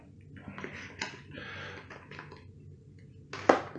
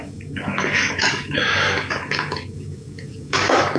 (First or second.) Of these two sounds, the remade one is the second